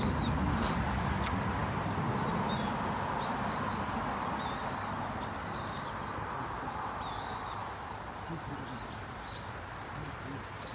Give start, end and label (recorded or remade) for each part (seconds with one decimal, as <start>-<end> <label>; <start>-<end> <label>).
0.0-10.7 recorded